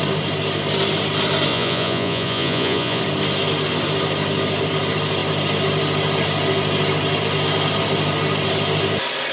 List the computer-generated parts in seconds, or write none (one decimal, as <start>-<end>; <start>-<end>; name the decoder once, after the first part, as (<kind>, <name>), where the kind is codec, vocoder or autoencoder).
1.5-3.0 (vocoder, Vocos)